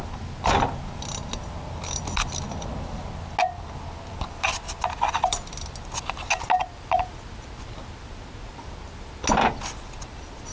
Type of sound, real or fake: real